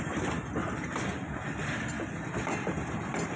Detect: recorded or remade recorded